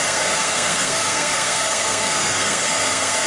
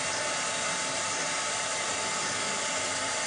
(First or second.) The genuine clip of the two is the second